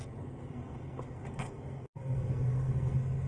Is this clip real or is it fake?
fake